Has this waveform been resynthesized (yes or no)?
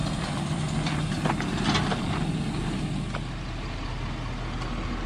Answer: no